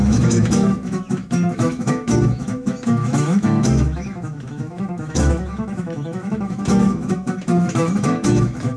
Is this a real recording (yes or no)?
no